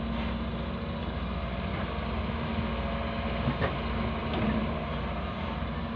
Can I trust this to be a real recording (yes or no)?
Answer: yes